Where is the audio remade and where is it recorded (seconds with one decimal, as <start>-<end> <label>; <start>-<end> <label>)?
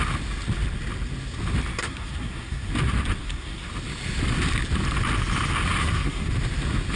0.0-1.8 recorded; 1.8-2.7 remade; 2.7-3.2 recorded; 3.2-3.7 remade; 3.7-5.8 recorded; 5.8-6.3 remade; 6.3-7.0 recorded